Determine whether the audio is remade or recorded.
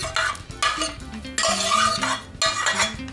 recorded